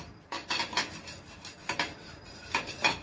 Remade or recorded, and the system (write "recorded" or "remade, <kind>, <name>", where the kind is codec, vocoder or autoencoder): recorded